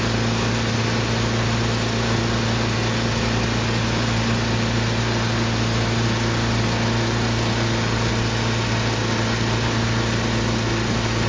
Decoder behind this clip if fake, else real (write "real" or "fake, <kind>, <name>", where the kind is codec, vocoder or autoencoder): real